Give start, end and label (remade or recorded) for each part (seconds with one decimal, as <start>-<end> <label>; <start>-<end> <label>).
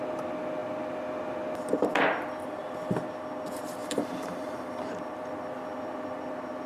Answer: 0.0-3.8 recorded; 3.8-4.9 remade; 4.9-6.7 recorded